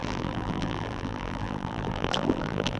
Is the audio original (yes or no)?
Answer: no